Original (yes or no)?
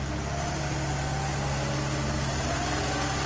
yes